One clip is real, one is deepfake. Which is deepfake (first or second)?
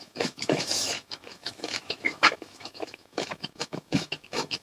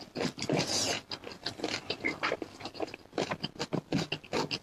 first